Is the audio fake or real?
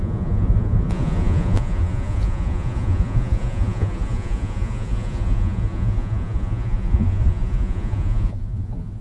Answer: fake